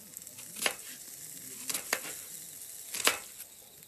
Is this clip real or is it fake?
real